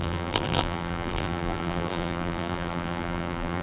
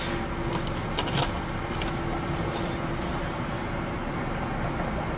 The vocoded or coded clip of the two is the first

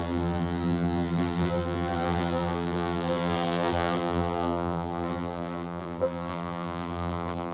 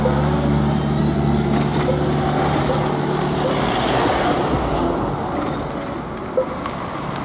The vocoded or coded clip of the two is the first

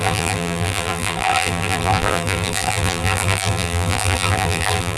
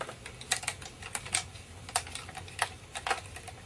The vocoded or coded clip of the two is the first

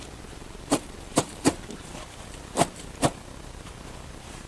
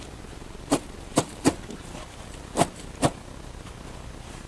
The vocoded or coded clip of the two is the first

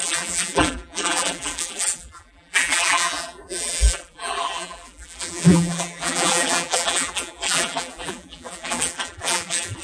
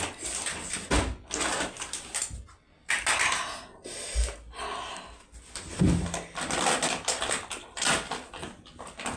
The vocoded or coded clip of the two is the first